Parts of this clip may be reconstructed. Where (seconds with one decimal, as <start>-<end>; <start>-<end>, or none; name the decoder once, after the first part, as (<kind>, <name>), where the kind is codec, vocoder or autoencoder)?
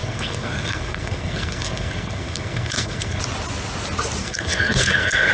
0.0-3.2 (codec, SNAC); 4.2-5.3